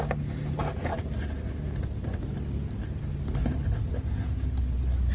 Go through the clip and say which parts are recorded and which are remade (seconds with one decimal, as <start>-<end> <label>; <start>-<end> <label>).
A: 0.0-5.1 recorded

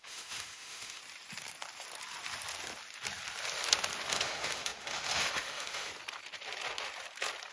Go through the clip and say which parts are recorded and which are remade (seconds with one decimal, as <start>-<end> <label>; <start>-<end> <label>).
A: 0.0-1.0 remade; 1.0-4.1 recorded; 4.1-5.9 remade; 5.9-7.5 recorded

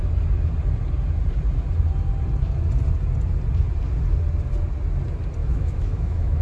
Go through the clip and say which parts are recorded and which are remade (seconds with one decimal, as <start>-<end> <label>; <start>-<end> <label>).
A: 0.0-5.4 recorded; 5.4-6.4 remade

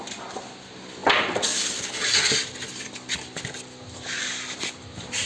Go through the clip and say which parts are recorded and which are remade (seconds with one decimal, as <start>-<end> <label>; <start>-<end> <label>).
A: 0.0-5.3 recorded